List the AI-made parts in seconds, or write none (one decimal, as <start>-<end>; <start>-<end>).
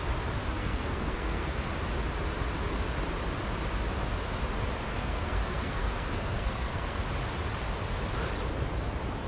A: 0.6-1.7; 4.9-7.0